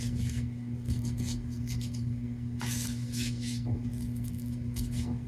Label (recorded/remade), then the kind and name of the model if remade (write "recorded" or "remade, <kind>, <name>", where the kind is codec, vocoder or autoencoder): remade, codec, SNAC